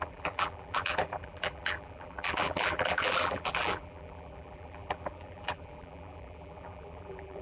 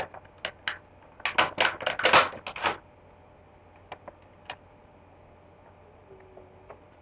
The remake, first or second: first